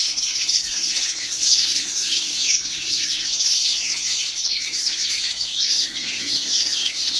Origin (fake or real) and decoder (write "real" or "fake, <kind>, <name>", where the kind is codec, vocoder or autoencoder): fake, codec, SNAC